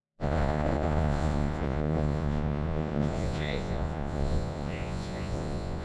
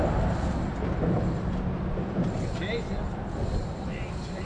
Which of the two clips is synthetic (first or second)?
first